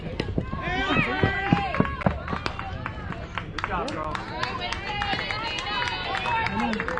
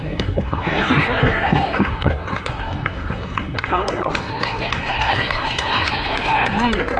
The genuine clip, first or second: first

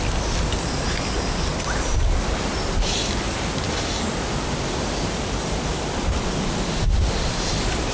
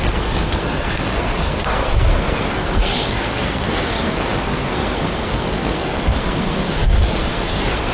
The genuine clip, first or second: first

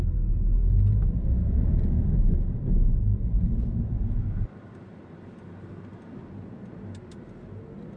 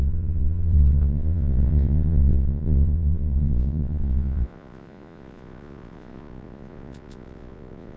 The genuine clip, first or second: first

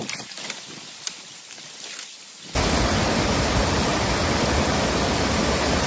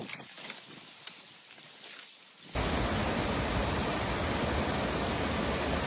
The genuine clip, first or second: second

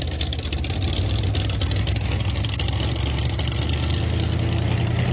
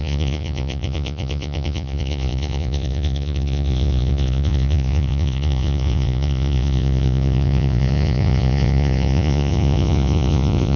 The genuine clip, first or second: first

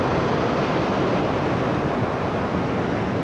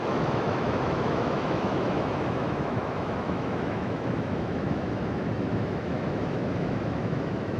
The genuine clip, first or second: first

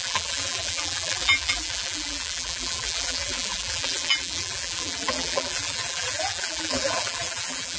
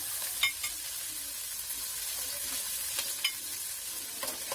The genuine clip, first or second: second